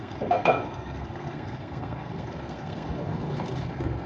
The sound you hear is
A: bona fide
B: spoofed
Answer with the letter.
B